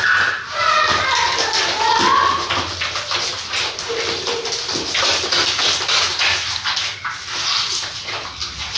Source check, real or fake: real